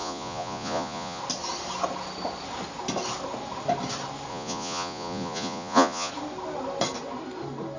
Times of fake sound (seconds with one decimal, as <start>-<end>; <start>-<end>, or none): 0.0-1.2; 4.3-6.1